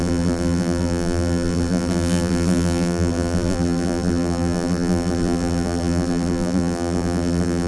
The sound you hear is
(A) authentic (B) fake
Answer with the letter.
B